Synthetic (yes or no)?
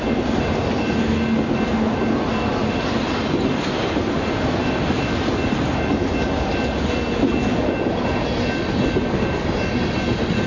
no